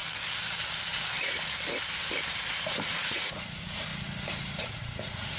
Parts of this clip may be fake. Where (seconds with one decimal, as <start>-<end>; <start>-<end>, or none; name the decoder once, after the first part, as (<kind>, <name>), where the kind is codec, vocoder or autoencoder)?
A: 2.7-3.9 (vocoder, Vocos); 4.6-5.4